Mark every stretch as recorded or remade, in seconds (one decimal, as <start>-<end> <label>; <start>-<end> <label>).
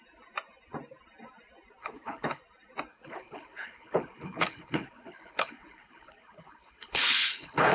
0.0-1.8 recorded; 1.8-2.4 remade; 2.4-2.9 recorded; 2.9-7.7 remade